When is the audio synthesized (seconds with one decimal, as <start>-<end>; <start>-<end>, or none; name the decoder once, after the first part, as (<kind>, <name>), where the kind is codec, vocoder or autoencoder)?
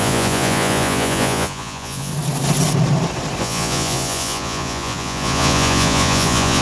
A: 0.0-2.1 (vocoder, Vocos); 3.4-6.6